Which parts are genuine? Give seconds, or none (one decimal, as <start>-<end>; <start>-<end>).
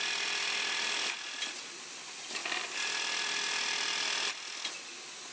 0.0-5.3